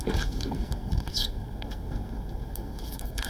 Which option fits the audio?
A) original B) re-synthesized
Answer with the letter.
B